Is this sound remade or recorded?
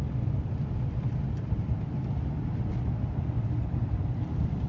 recorded